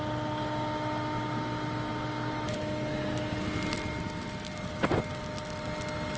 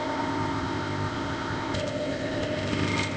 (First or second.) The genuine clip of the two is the first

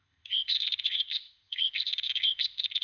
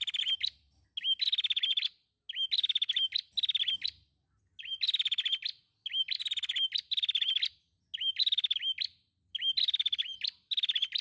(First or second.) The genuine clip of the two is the second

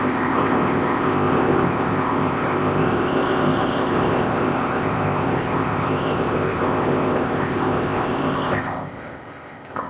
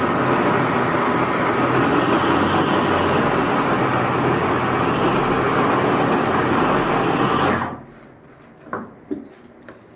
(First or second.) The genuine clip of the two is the second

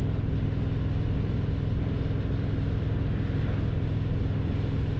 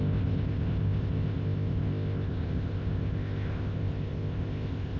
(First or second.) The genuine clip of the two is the first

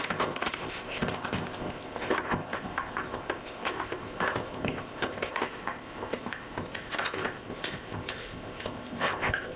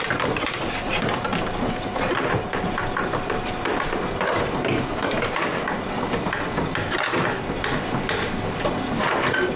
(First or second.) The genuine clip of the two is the second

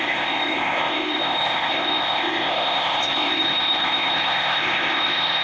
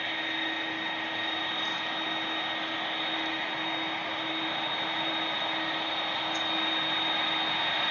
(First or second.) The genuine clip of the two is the second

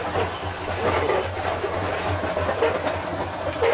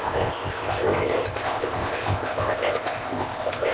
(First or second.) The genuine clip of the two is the first